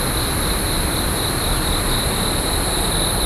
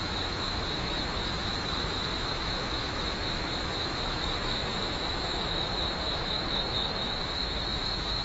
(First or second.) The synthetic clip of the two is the second